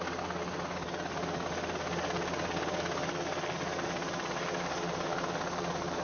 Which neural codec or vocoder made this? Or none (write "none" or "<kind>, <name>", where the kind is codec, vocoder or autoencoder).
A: none